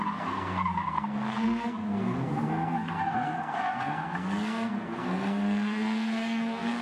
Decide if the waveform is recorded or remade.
remade